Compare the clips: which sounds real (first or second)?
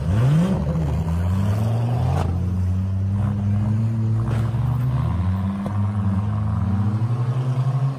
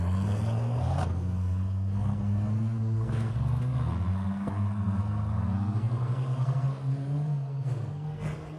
first